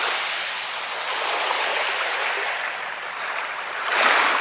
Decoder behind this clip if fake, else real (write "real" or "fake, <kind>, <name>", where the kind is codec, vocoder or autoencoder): real